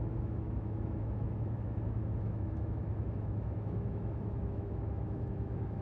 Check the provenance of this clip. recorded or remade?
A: remade